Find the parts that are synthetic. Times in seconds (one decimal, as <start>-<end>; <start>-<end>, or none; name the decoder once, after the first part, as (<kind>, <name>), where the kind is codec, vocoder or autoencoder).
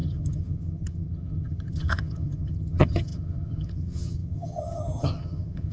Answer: 0.0-5.7 (vocoder, HiFi-GAN)